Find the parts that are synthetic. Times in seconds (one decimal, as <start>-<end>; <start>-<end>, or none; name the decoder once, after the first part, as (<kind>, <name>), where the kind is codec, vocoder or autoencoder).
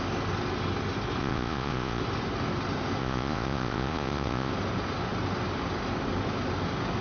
1.2-2.0 (vocoder, Vocos); 3.0-4.5